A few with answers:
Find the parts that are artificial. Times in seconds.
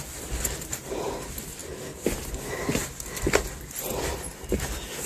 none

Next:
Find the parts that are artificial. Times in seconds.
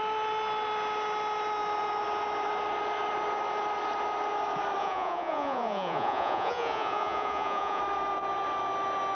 4.8-7.8 (vocoder, Vocos)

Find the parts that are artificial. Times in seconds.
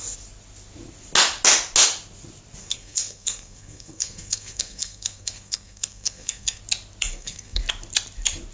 2.6-6.6 (codec, SNAC); 7.1-7.6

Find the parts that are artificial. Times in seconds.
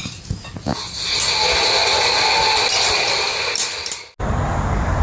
none